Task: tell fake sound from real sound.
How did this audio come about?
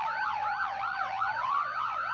fake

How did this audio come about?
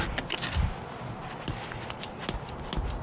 real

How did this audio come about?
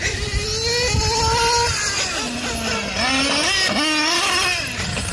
real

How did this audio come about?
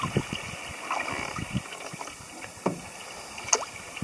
real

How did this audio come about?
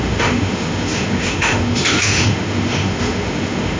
fake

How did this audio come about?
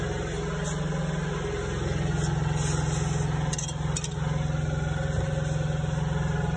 real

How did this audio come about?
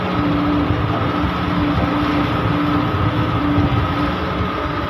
real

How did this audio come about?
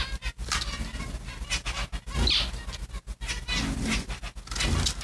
real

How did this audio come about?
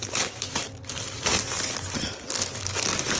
real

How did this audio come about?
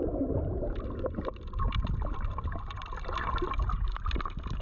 fake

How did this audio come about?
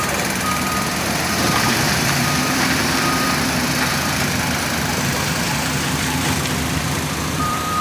fake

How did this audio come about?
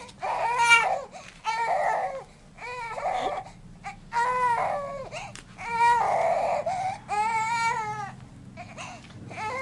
real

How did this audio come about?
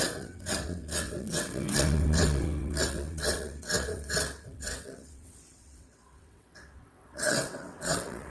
fake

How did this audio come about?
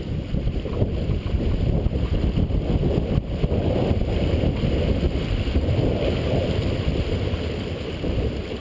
real